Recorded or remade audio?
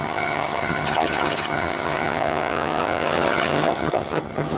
remade